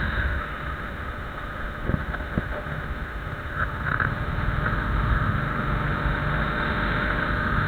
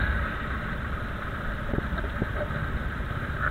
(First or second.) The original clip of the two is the second